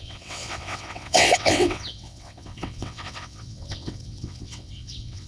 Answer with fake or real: fake